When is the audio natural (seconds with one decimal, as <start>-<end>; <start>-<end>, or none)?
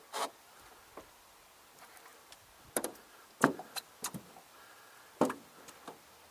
0.0-6.3